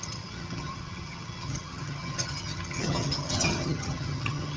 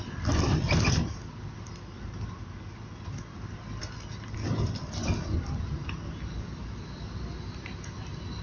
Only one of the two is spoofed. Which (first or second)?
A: first